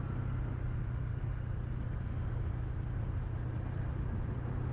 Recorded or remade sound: recorded